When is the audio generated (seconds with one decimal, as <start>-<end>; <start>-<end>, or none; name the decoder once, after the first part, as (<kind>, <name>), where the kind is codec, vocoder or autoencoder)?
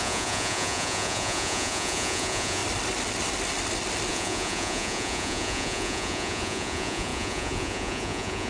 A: 0.0-2.6 (vocoder, Vocos); 4.1-8.5